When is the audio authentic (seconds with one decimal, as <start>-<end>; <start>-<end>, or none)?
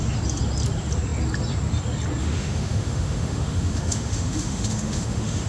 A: 0.0-2.2